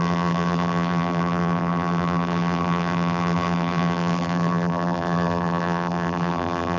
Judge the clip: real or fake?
fake